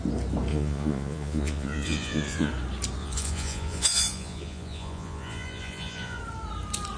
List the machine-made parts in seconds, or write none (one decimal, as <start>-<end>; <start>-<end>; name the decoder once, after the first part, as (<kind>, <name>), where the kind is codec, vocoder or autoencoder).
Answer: 0.5-2.5 (vocoder, Vocos); 3.0-6.2